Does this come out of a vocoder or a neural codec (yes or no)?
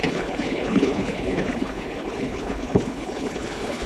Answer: yes